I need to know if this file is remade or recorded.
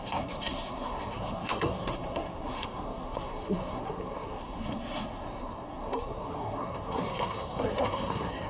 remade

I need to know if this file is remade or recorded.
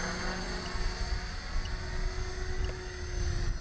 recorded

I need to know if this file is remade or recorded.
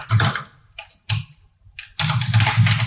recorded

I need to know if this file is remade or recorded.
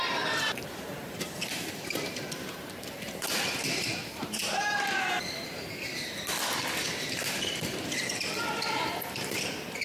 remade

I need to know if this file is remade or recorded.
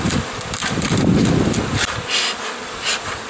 remade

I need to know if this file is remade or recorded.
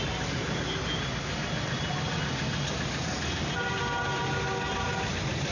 recorded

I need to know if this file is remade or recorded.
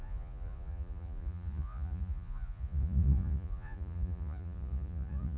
remade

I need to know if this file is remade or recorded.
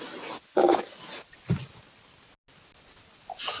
recorded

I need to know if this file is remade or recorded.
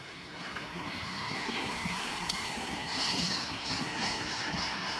remade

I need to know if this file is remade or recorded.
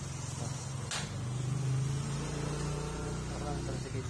recorded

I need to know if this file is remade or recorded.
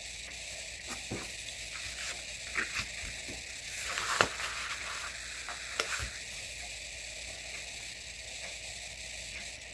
recorded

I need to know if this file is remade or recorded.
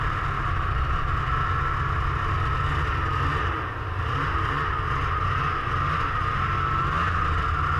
recorded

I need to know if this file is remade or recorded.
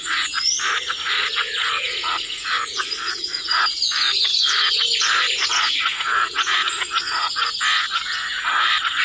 remade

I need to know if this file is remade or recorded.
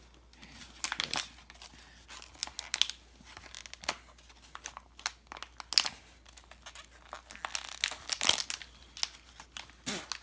recorded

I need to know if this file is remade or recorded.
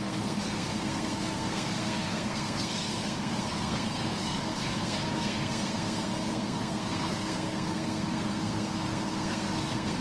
remade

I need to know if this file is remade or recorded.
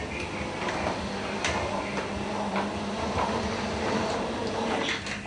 recorded